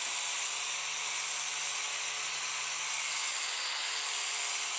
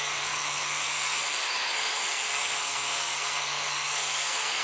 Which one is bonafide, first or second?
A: first